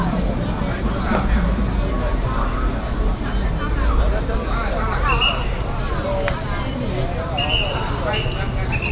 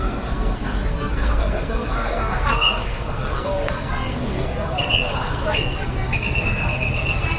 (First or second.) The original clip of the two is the first